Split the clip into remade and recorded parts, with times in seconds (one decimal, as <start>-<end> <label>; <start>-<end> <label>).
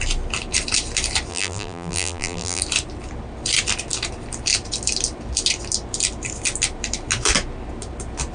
0.0-1.3 recorded; 1.3-2.6 remade; 2.6-8.3 recorded